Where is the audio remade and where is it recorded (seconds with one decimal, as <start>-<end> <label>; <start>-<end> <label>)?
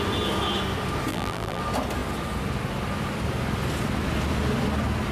0.0-1.1 recorded; 1.1-1.6 remade; 1.6-5.1 recorded